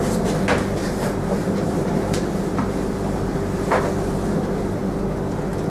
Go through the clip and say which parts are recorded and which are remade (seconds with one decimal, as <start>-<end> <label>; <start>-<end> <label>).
0.0-0.8 recorded; 0.8-3.8 remade; 3.8-5.7 recorded